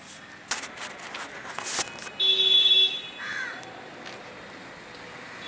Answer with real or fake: real